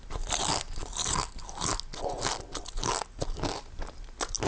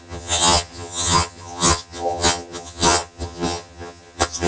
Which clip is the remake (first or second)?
second